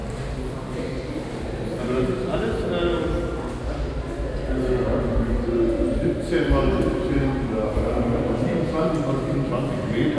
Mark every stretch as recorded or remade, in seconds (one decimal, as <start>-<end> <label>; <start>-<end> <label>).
0.0-0.8 remade; 0.8-10.2 recorded